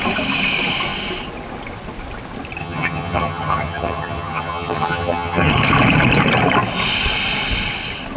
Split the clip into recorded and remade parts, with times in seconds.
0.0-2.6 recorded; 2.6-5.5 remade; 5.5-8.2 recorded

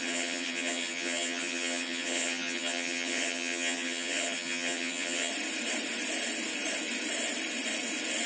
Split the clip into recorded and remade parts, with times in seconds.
0.0-5.3 remade; 5.3-8.3 recorded

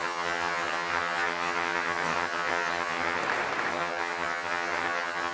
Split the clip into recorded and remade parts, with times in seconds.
0.0-3.2 remade; 3.2-3.7 recorded; 3.7-5.3 remade

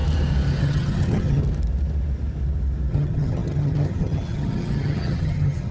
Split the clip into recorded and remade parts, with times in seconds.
0.0-0.6 recorded; 0.6-1.4 remade; 1.4-2.9 recorded; 2.9-5.7 remade

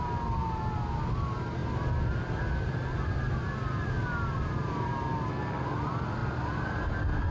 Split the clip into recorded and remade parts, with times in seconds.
0.0-7.3 recorded

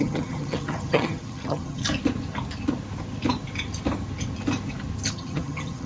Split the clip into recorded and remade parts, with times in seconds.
0.0-1.8 remade; 1.8-5.1 recorded; 5.1-5.9 remade

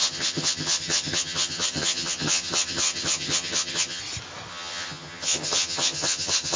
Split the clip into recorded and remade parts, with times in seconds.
0.0-4.0 remade; 4.0-4.5 recorded; 4.5-6.6 remade

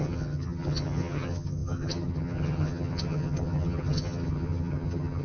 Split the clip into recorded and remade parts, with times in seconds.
0.0-5.2 remade